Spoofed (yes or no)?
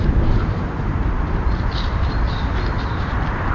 yes